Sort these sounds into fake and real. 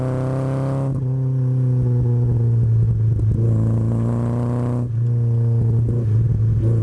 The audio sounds real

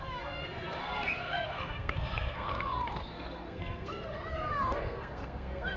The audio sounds fake